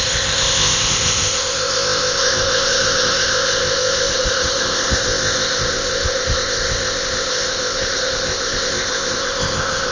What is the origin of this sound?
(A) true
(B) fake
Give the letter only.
B